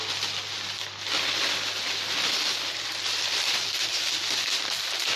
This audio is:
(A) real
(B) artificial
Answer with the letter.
A